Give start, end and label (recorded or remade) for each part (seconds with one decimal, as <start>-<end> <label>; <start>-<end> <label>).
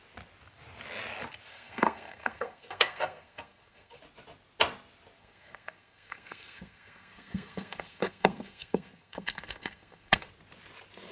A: 0.0-1.5 recorded; 1.5-4.0 remade; 4.0-5.2 recorded; 5.2-10.3 remade; 10.3-11.1 recorded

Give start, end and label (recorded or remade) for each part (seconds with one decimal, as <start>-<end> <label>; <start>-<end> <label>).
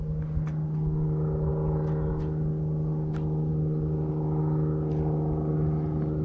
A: 0.0-6.2 recorded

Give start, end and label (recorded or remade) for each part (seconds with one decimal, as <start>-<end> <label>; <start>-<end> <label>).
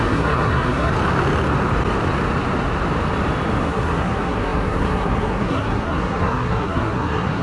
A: 0.0-0.9 remade; 0.9-3.6 recorded; 3.6-7.4 remade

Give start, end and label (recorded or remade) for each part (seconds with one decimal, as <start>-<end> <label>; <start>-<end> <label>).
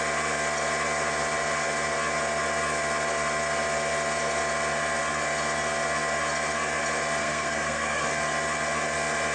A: 0.0-7.2 recorded; 7.2-8.0 remade; 8.0-9.3 recorded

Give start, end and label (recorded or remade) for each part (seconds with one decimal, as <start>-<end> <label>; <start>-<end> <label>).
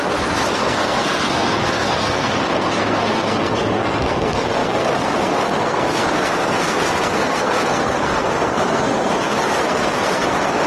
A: 0.0-10.7 remade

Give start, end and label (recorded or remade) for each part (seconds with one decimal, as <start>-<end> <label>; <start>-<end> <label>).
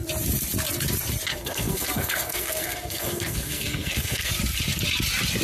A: 0.0-1.3 recorded; 1.3-4.3 remade; 4.3-5.4 recorded